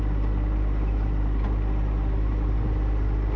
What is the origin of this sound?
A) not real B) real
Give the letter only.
B